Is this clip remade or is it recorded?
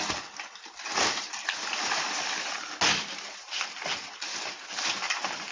recorded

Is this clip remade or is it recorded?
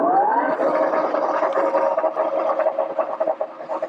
recorded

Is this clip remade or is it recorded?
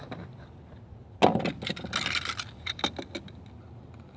recorded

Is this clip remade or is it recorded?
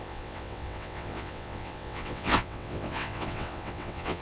remade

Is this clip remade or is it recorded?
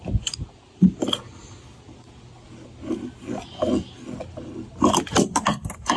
recorded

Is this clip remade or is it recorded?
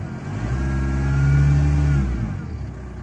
recorded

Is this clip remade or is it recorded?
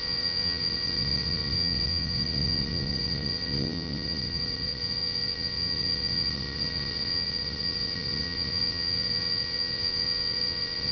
remade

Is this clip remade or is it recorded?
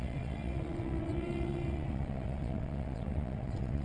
remade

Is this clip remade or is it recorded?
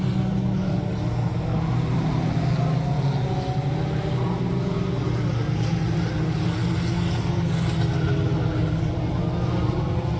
recorded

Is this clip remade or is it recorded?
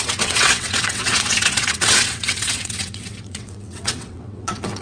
remade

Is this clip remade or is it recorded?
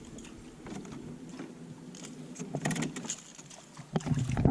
recorded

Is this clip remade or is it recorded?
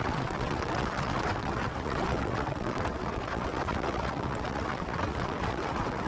remade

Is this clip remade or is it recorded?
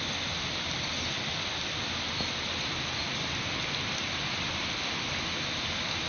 recorded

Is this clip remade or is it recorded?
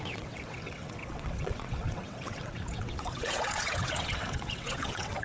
remade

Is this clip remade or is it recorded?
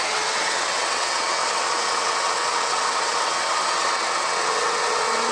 remade